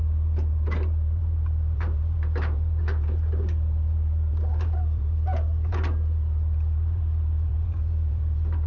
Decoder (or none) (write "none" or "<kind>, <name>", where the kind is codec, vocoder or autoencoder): vocoder, BigVGAN v2